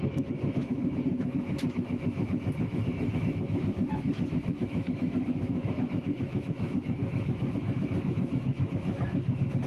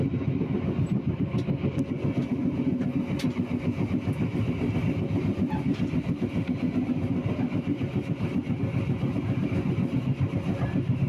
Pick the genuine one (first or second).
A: second